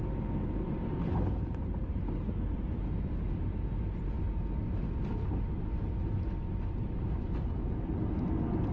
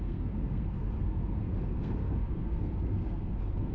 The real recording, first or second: first